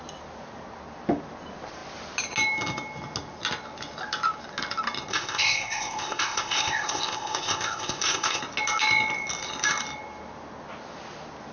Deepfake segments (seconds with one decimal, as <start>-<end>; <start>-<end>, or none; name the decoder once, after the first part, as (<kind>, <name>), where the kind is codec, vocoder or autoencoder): 5.1-8.4 (codec, ZipCodec)